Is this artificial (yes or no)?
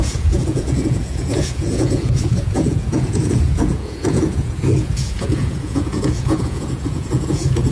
yes